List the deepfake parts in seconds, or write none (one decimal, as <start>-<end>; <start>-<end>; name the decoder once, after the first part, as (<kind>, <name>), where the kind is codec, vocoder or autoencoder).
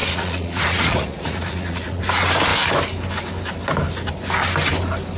0.0-2.0 (vocoder, Vocos)